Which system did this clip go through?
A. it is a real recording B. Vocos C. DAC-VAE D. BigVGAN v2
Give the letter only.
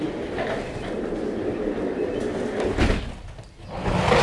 A